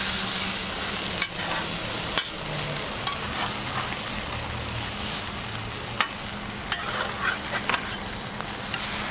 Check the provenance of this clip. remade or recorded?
recorded